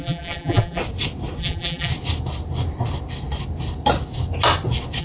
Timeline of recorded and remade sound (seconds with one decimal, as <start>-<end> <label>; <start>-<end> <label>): 0.0-0.8 remade; 0.8-1.4 recorded; 1.4-1.9 remade; 1.9-5.0 recorded